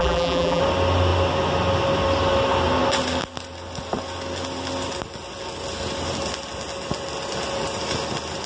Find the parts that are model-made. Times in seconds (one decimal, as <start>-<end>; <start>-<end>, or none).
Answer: 0.0-0.6